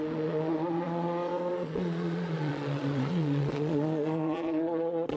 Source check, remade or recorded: remade